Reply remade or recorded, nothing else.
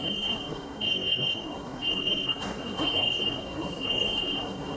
remade